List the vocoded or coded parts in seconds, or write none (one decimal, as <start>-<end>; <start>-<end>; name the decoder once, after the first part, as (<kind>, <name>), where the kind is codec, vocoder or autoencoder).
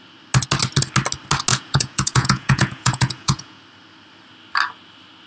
1.5-3.6 (vocoder, Vocos)